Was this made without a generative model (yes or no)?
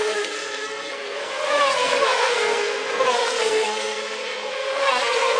no